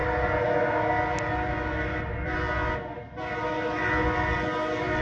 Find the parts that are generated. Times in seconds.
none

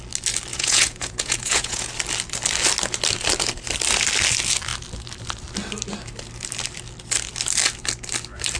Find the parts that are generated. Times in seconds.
0.5-1.9 (vocoder, Vocos)

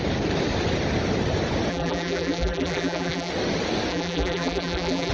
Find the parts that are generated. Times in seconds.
1.7-3.3 (vocoder, BigVGAN v2); 3.9-5.1

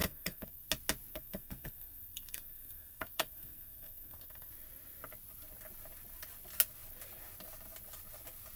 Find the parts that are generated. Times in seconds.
0.0-0.7 (codec, SNAC); 1.1-4.5

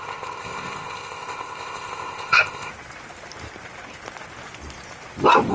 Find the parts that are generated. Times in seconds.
0.0-2.7 (codec, ZipCodec)

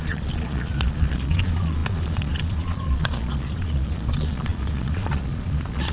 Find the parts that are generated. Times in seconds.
0.0-5.9 (vocoder, Vocos)

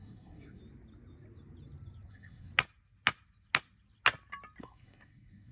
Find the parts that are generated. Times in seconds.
0.0-0.6 (codec, SNAC); 2.1-2.5; 4.6-5.5

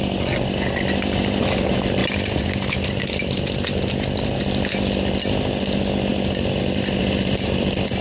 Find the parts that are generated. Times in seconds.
none